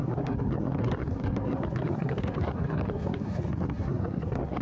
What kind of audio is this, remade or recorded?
remade